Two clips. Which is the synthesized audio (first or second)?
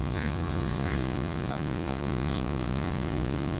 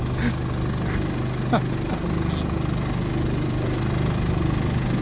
first